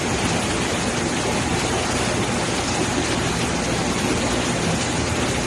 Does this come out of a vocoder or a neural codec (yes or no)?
no